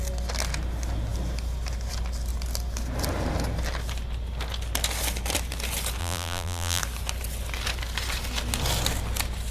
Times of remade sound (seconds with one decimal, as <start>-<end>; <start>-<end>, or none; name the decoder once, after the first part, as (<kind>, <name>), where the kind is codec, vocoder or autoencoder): 6.0-6.8 (vocoder, BigVGAN v2)